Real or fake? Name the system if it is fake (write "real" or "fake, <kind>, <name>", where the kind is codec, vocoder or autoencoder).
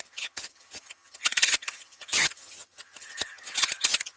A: fake, vocoder, HiFi-GAN